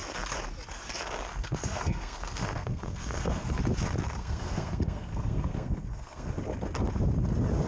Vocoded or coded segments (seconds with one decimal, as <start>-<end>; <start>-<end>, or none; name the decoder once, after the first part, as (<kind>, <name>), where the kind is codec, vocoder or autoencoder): 1.3-3.6 (codec, SNAC); 4.2-6.3